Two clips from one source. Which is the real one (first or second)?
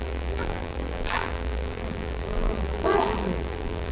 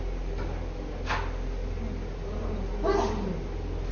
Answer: second